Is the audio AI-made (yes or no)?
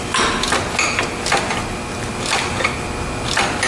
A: no